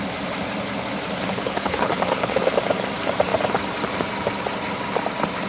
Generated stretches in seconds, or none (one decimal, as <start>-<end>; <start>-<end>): 1.3-2.4